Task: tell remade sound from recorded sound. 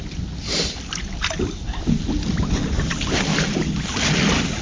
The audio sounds recorded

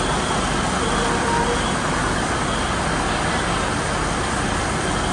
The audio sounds recorded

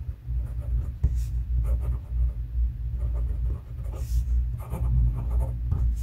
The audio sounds recorded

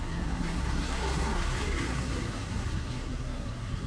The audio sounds remade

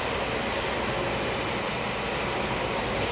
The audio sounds recorded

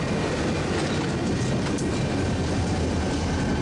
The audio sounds recorded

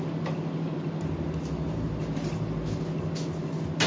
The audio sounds recorded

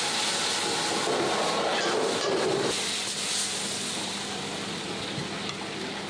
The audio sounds recorded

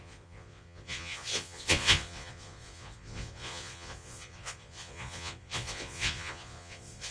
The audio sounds remade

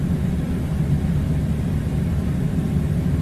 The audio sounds recorded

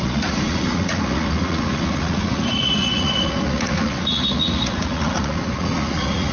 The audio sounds remade